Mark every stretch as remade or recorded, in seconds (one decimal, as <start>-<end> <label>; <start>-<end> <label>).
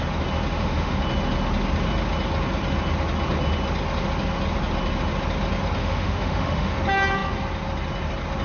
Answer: 0.0-0.5 recorded; 0.5-1.0 remade; 1.0-5.8 recorded; 5.8-6.7 remade; 6.7-8.4 recorded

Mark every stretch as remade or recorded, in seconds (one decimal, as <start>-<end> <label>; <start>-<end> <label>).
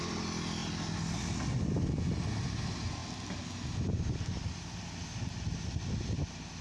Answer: 0.0-6.6 recorded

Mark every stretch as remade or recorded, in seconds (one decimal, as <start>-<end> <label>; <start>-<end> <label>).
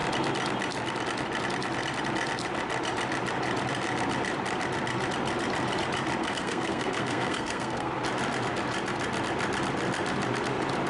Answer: 0.0-6.2 recorded; 6.2-7.9 remade; 7.9-10.9 recorded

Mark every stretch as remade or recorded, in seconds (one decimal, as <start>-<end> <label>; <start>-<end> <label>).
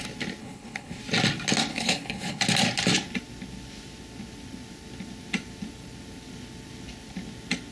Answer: 0.0-0.4 recorded; 0.4-1.0 remade; 1.0-1.7 recorded; 1.7-2.4 remade; 2.4-7.7 recorded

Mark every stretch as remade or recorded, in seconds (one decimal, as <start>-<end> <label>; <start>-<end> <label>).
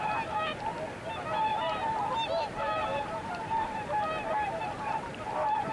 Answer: 0.0-1.5 recorded; 1.5-4.9 remade; 4.9-5.7 recorded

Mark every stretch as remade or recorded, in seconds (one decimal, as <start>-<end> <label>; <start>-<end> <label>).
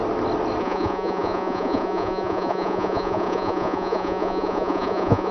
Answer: 0.0-0.6 recorded; 0.6-5.3 remade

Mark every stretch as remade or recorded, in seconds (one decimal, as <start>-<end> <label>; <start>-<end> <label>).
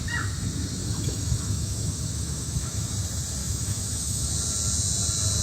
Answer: 0.0-0.8 recorded; 0.8-2.9 remade; 2.9-3.4 recorded; 3.4-4.3 remade; 4.3-5.4 recorded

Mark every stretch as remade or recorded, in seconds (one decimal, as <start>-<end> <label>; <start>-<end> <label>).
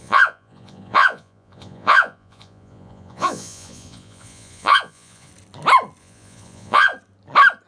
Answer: 0.0-5.3 remade; 5.3-6.0 recorded; 6.0-6.9 remade; 6.9-7.7 recorded